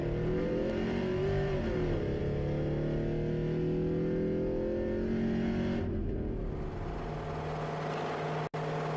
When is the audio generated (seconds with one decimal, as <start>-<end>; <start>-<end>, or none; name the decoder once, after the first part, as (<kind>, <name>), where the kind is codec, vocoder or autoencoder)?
0.0-2.2 (vocoder, BigVGAN v2)